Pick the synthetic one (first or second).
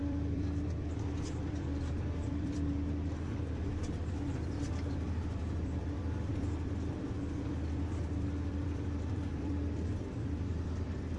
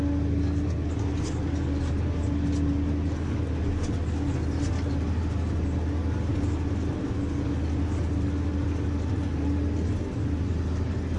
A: first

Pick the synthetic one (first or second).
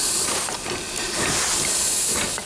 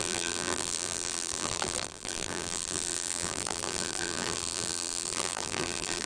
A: second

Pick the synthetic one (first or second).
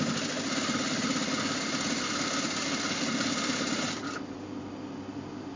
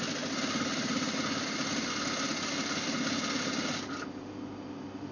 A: first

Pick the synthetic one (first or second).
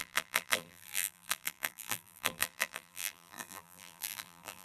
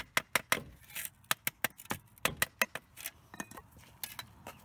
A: first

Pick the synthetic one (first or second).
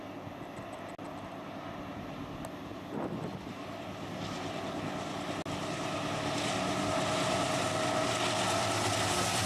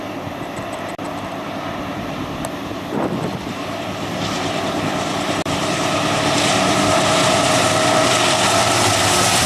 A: second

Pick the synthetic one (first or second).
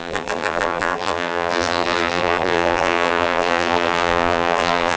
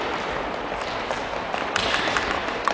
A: first